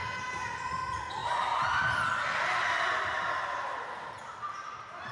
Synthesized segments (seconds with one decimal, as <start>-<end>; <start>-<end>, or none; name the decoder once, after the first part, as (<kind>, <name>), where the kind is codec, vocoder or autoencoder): none